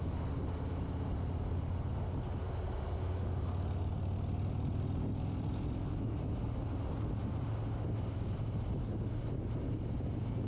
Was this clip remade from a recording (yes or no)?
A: no